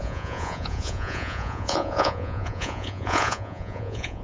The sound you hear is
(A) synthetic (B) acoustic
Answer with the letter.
A